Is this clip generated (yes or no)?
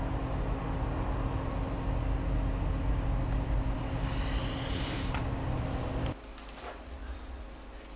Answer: no